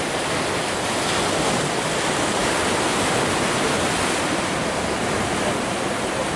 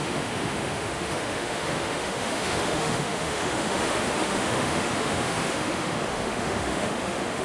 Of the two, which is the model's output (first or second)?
second